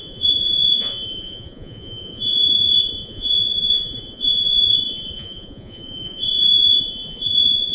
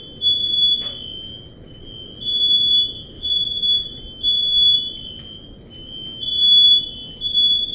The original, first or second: second